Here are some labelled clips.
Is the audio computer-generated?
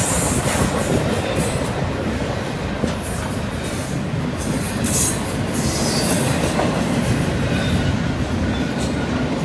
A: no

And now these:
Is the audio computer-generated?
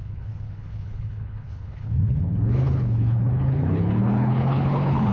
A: yes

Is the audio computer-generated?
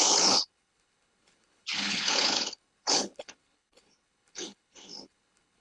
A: yes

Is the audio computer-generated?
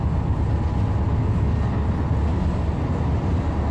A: no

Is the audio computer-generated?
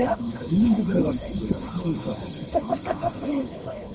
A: yes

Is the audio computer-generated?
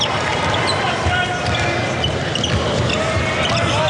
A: no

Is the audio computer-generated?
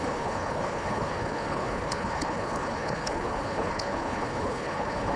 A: yes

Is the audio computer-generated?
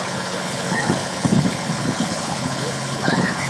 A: yes